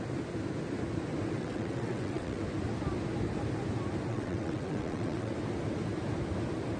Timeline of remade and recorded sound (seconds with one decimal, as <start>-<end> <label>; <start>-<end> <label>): 0.0-1.4 recorded; 1.4-2.4 remade; 2.4-4.1 recorded; 4.1-5.3 remade; 5.3-6.8 recorded